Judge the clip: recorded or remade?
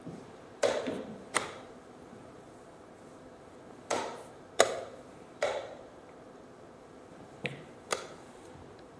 remade